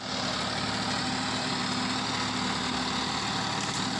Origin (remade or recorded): recorded